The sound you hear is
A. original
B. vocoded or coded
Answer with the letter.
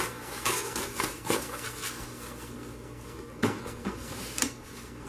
B